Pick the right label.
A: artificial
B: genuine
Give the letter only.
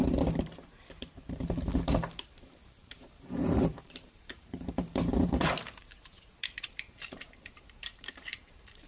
A